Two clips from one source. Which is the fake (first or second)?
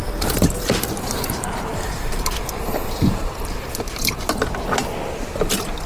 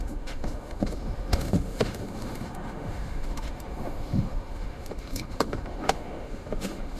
second